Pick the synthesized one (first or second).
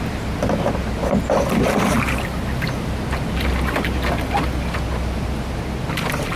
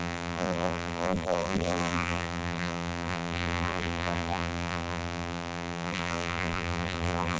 second